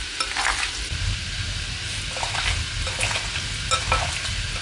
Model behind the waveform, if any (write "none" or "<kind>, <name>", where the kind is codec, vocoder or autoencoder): none